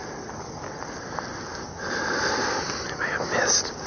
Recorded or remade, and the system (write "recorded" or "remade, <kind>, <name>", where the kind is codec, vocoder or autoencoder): recorded